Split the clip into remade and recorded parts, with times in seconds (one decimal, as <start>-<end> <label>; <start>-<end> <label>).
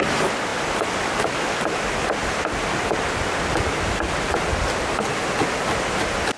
0.0-6.4 recorded